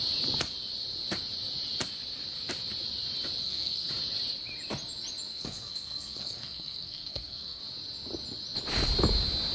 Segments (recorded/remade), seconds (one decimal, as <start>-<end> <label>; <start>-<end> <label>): 0.0-3.4 recorded; 3.4-3.9 remade; 3.9-5.3 recorded; 5.3-7.6 remade; 7.6-9.5 recorded